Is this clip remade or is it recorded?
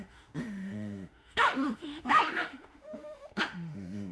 remade